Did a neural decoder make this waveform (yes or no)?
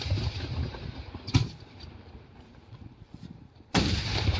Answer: yes